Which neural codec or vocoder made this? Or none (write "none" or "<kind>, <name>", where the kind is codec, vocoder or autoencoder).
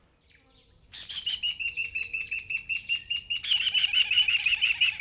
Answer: none